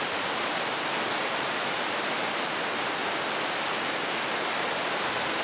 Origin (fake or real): real